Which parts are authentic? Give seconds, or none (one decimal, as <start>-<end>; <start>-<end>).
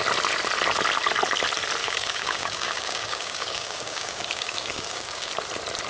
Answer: 0.0-1.8; 5.3-5.9